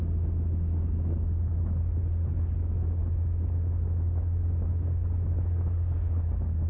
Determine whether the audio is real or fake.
real